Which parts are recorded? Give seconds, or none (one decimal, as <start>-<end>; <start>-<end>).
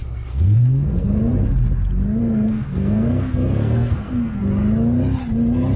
1.2-2.2; 4.4-5.8